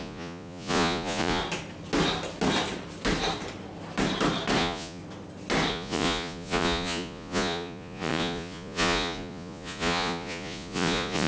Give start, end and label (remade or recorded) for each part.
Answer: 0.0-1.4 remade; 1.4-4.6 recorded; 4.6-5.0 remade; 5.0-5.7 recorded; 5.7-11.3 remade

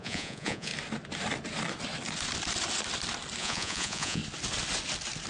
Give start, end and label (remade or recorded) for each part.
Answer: 0.0-0.7 remade; 0.7-3.4 recorded; 3.4-4.2 remade; 4.2-5.3 recorded

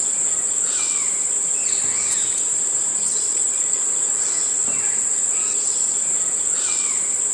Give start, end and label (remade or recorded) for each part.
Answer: 0.0-2.9 recorded; 2.9-3.8 remade; 3.8-7.3 recorded

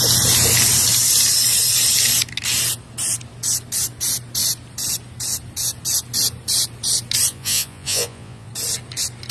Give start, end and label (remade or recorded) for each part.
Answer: 0.0-7.3 recorded; 7.3-8.5 remade; 8.5-9.3 recorded

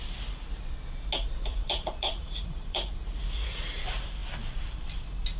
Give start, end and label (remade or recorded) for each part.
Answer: 0.0-1.5 recorded; 1.5-3.8 remade; 3.8-5.4 recorded